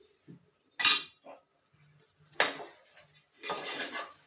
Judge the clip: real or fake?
real